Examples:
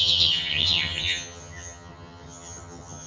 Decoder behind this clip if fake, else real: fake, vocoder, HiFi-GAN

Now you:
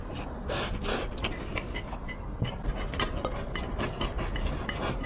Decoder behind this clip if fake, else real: real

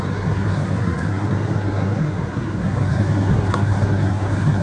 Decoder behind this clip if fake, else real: fake, codec, SNAC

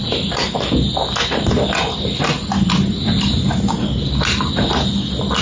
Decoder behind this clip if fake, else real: real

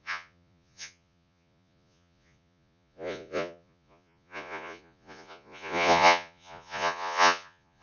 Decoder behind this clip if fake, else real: fake, vocoder, Vocos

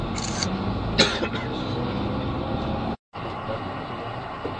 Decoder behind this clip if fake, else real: real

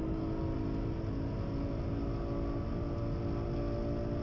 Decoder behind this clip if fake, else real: real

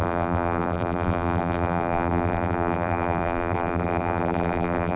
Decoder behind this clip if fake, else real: fake, vocoder, BigVGAN v2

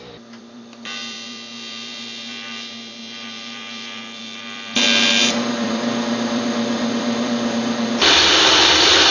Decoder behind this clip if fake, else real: fake, vocoder, BigVGAN v2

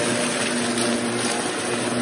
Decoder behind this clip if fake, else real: real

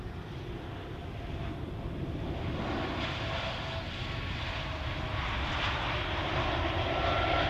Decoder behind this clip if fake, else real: real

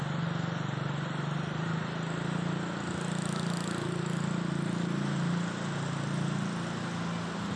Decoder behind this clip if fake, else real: real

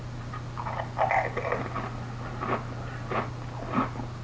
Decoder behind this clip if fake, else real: real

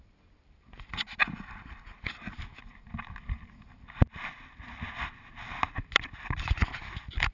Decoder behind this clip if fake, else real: real